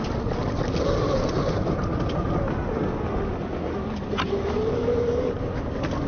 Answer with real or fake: real